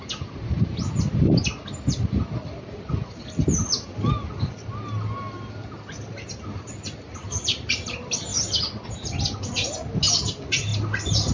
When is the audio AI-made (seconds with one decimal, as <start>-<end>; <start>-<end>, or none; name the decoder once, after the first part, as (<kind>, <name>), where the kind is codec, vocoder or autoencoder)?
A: none